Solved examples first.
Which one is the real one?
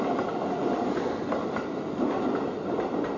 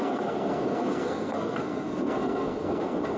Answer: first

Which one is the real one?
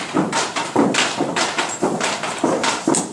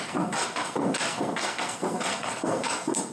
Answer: first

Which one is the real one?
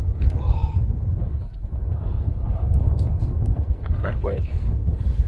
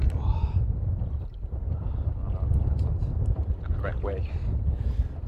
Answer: second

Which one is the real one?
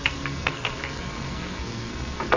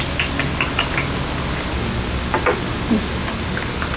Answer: second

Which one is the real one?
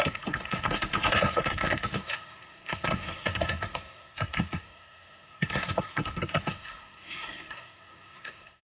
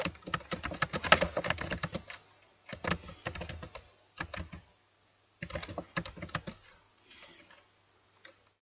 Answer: second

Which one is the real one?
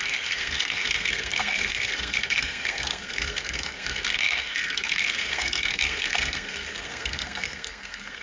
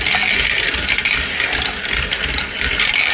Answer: second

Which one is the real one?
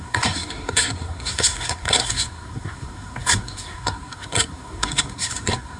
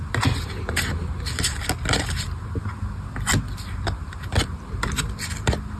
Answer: second